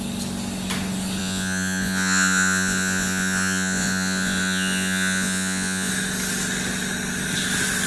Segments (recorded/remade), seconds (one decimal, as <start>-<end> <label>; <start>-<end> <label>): 0.0-1.2 recorded; 1.2-5.9 remade; 5.9-7.9 recorded

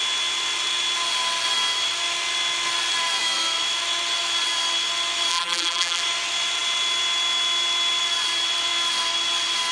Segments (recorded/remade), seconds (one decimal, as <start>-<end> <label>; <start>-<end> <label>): 0.0-5.3 recorded; 5.3-6.0 remade; 6.0-9.7 recorded

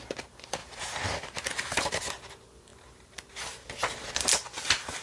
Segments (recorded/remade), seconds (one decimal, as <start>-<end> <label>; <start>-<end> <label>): 0.0-0.6 recorded; 0.6-2.0 remade; 2.0-5.0 recorded

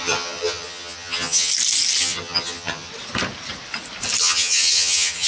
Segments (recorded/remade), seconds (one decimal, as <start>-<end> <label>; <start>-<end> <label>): 0.0-1.5 remade; 1.5-2.0 recorded; 2.0-2.9 remade; 2.9-4.2 recorded; 4.2-5.3 remade

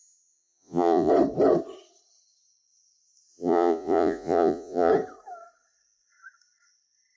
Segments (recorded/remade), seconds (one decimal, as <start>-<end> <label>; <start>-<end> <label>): 0.0-1.1 remade; 1.1-3.3 recorded; 3.3-4.9 remade; 4.9-7.2 recorded